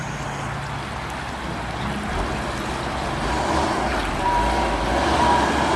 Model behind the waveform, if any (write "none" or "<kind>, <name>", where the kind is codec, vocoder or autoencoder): none